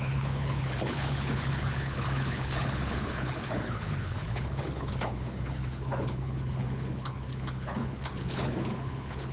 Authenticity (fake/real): fake